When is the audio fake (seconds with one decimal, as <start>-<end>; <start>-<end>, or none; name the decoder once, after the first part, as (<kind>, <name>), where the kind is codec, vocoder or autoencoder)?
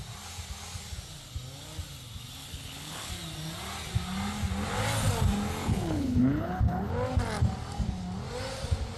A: 2.4-3.1 (codec, HILCodec); 5.6-6.9